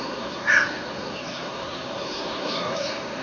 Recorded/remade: remade